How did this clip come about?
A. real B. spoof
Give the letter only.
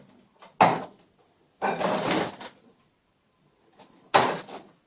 A